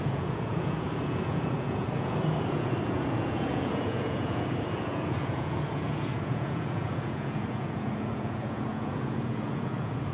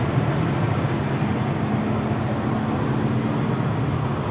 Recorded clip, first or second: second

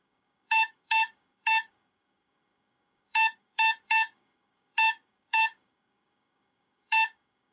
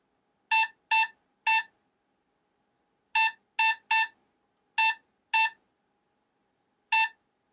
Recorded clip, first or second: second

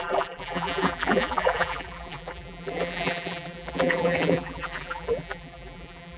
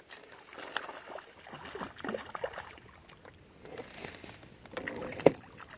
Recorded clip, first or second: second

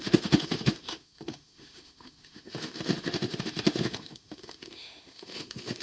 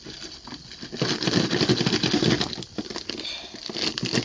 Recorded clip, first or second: second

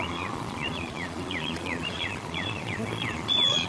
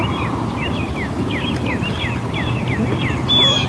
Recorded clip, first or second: second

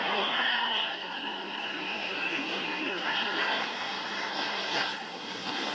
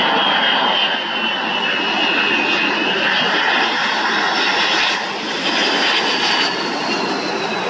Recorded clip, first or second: second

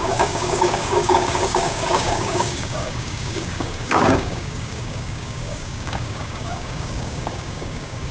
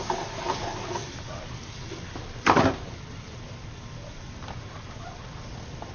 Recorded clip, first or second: second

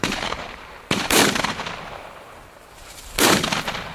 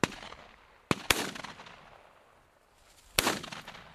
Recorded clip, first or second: second